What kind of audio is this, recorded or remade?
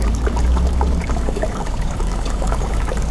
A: remade